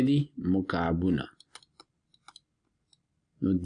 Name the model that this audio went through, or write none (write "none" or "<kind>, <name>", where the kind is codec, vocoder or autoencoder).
none